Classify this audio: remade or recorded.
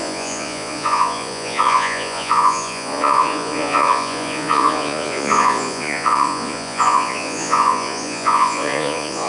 remade